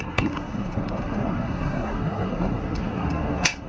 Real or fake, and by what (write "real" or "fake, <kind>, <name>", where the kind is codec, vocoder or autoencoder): fake, codec, SNAC